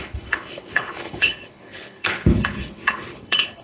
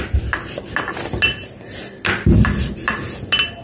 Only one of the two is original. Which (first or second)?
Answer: second